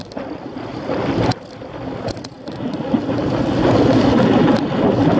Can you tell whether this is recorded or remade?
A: recorded